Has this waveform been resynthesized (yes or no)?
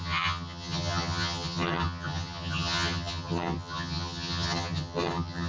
yes